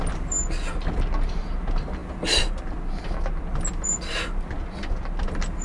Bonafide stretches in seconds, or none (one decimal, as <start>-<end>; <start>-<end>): 0.0-5.6